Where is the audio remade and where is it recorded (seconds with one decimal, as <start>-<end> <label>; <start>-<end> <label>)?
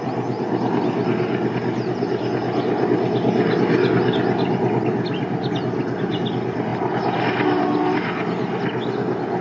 0.0-9.4 recorded